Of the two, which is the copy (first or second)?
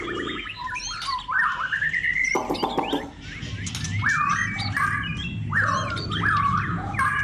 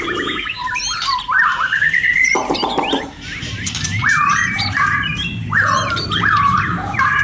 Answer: second